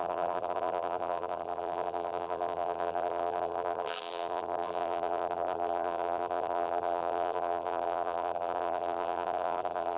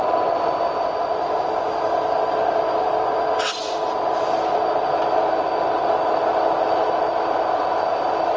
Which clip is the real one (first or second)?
second